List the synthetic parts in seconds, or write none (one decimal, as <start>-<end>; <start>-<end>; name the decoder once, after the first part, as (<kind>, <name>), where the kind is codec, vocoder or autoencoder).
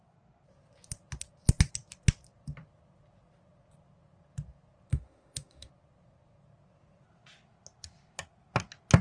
4.9-5.7 (autoencoder, DAC-VAE)